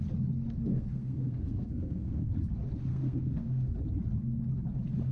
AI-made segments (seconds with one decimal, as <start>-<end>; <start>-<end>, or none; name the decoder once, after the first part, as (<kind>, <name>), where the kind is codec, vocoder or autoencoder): 0.7-2.3 (codec, SNAC); 2.9-3.7